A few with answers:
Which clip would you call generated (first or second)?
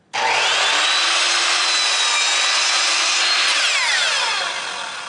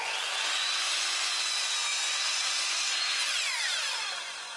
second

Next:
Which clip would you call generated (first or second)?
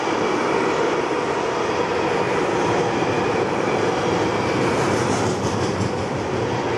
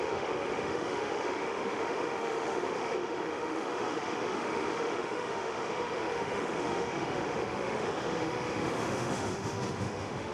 second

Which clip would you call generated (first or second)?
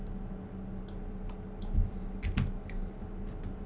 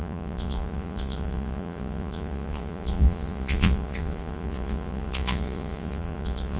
second